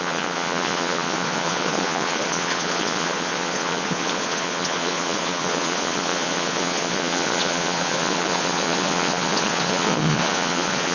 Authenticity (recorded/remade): remade